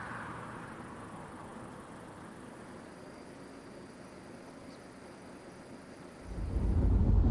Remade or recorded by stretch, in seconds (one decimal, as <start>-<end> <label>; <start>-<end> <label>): 0.0-7.3 recorded